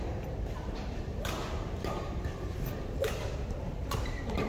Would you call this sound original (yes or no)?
no